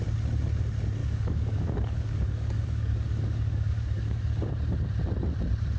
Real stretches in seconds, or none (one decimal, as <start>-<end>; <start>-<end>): 0.0-1.0; 4.5-5.8